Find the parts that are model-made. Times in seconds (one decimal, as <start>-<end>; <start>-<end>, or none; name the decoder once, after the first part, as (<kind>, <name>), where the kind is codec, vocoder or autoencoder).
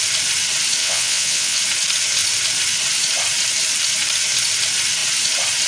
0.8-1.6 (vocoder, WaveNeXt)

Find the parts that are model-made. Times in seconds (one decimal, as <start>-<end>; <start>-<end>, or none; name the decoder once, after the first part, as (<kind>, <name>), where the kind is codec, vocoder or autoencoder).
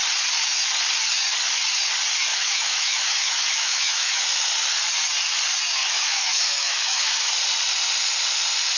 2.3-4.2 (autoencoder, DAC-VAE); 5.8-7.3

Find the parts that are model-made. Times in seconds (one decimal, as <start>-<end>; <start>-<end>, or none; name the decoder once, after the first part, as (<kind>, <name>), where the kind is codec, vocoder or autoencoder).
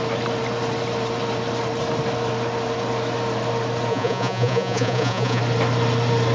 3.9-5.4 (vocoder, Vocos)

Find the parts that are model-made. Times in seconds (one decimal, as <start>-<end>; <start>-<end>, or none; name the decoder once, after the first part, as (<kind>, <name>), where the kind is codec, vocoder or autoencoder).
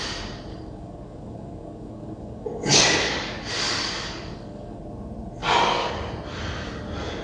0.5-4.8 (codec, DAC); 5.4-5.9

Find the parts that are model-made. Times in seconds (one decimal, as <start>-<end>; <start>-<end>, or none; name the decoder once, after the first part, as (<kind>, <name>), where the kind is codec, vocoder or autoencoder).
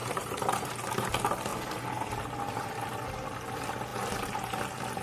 0.0-1.1 (vocoder, BigVGAN v2); 1.5-2.2; 3.9-4.6